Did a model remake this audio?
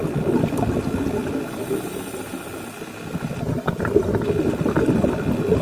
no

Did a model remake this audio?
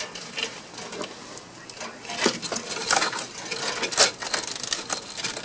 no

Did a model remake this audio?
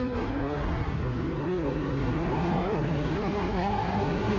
yes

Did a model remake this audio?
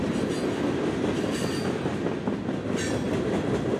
no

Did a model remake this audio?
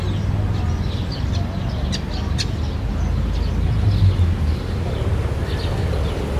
no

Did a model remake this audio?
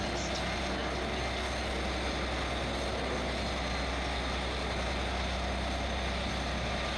no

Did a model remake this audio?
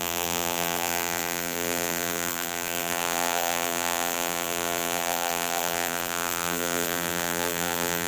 yes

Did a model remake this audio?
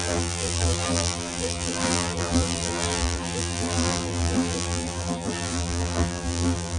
yes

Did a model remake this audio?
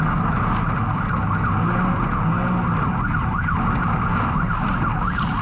no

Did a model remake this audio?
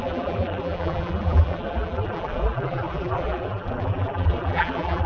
yes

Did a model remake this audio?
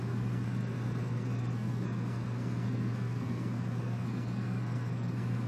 yes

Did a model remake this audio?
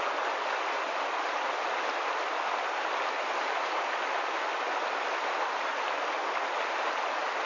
no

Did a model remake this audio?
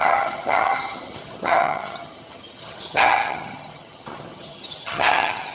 yes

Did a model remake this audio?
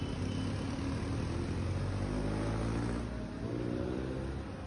no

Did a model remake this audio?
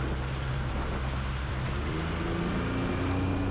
no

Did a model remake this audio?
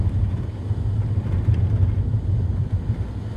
no